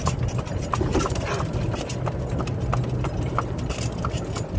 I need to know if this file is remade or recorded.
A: recorded